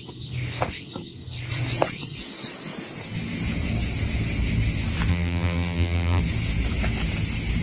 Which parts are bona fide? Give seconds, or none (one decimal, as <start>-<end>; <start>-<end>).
0.0-5.1; 6.2-7.6